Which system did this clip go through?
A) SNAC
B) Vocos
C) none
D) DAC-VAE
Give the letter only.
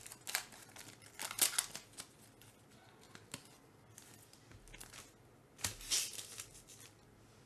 C